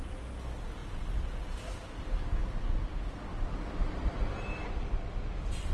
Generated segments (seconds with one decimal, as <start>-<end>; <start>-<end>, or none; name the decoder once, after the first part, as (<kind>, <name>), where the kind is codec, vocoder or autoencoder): none